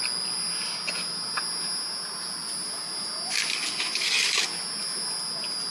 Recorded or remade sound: recorded